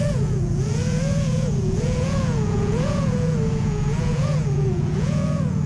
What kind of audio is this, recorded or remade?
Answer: remade